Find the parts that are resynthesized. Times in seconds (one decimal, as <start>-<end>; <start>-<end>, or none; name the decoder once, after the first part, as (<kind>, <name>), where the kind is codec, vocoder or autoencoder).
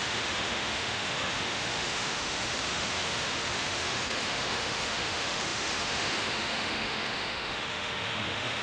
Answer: 0.0-8.6 (autoencoder, DAC-VAE)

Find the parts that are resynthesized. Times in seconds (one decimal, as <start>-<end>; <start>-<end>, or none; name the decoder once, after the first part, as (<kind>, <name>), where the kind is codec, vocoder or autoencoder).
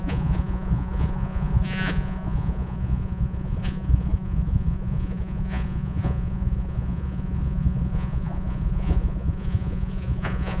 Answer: 0.0-10.6 (vocoder, Vocos)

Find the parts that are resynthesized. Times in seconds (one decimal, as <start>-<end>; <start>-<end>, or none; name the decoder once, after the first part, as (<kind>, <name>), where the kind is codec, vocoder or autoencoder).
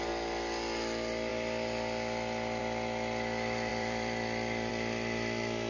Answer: 3.7-4.7 (vocoder, BigVGAN v2)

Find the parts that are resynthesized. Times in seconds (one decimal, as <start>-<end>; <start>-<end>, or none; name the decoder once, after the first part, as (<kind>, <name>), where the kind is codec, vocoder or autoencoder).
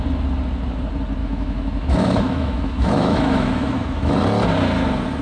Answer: 1.2-4.1 (autoencoder, DAC-VAE)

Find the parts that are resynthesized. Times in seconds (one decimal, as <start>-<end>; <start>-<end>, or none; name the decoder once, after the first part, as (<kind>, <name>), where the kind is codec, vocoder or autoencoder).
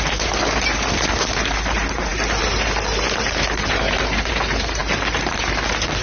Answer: none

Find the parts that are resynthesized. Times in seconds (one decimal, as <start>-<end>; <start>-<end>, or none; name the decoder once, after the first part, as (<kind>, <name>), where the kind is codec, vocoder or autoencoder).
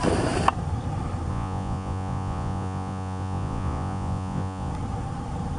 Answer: 1.3-4.7 (vocoder, Vocos)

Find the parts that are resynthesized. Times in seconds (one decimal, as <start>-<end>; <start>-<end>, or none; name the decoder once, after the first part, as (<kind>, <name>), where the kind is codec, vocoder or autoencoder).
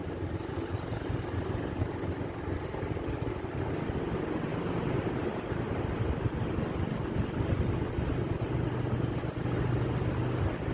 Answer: 0.0-0.5 (vocoder, BigVGAN v2); 4.5-5.3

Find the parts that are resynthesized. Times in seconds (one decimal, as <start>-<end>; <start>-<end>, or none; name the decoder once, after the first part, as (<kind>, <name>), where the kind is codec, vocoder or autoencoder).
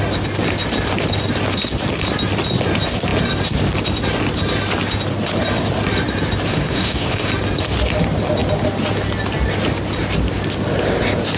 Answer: 6.5-7.3 (autoencoder, DAC-VAE)